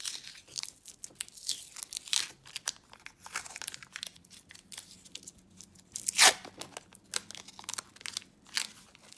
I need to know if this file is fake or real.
real